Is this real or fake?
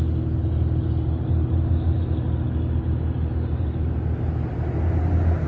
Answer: real